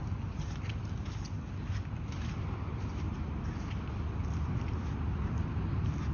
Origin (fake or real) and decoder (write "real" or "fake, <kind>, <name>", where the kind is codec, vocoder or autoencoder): real